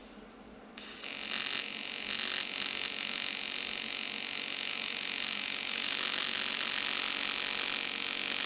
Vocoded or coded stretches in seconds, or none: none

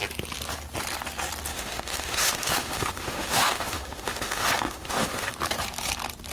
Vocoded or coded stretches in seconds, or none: 1.5-5.3 (autoencoder, DAC-VAE)

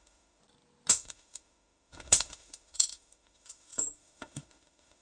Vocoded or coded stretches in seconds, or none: 0.0-0.4 (autoencoder, DAC-VAE); 0.9-5.0

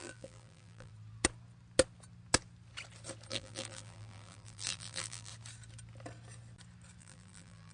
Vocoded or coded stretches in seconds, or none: 0.0-0.9 (vocoder, BigVGAN v2); 3.3-5.3; 7.0-7.7

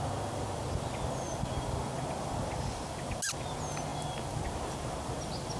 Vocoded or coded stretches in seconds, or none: none